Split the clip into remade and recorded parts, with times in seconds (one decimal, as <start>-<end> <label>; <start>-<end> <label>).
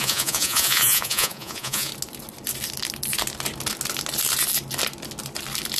0.0-1.9 remade; 1.9-5.8 recorded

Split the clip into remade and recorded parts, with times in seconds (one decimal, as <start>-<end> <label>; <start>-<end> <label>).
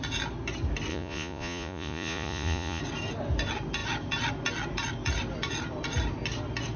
0.0-0.9 recorded; 0.9-2.8 remade; 2.8-6.8 recorded